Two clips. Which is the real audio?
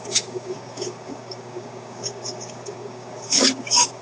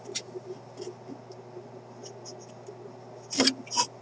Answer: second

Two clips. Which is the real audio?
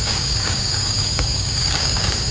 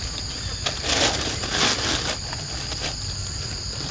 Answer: second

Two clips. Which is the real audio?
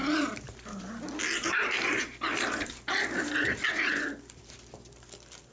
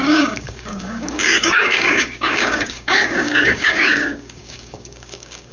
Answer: first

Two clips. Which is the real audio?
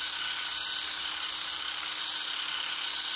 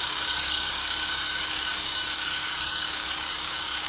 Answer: first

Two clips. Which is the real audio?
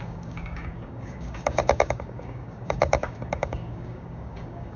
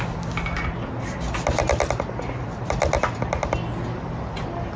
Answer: second